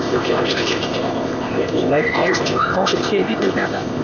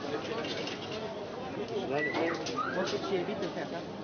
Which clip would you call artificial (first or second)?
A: first